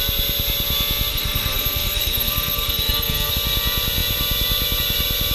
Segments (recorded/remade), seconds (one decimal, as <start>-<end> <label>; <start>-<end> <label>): 0.0-1.1 recorded; 1.1-3.3 remade; 3.3-5.3 recorded